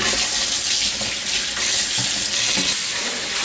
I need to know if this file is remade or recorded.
recorded